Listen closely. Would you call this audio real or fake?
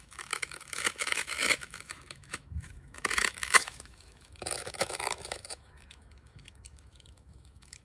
fake